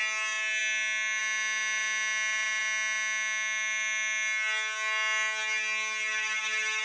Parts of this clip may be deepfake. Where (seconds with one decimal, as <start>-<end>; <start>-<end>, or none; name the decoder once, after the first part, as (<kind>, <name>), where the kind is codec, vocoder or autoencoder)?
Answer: none